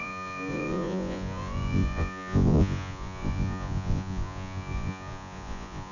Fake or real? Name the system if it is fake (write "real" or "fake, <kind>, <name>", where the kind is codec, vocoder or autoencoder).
fake, vocoder, Vocos